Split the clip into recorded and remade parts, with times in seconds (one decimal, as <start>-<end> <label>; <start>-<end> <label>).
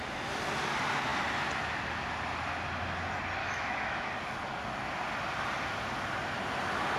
0.0-3.4 recorded; 3.4-4.1 remade; 4.1-7.0 recorded